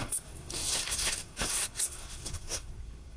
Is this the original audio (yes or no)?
no